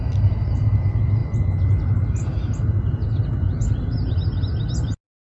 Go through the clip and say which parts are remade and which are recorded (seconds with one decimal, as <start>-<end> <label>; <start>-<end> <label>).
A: 0.0-5.3 recorded

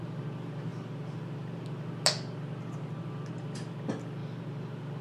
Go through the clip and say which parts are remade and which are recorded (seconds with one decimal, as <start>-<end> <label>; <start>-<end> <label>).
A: 0.0-5.0 recorded

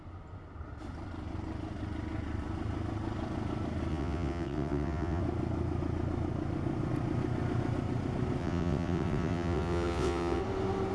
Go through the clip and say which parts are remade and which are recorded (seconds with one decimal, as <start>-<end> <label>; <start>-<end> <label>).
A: 0.0-3.9 recorded; 3.9-5.2 remade; 5.2-8.4 recorded; 8.4-10.4 remade; 10.4-10.9 recorded